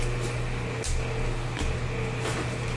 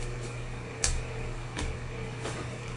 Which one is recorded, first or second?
first